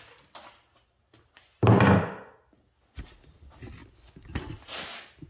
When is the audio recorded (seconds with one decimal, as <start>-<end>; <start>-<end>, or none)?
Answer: 0.0-5.3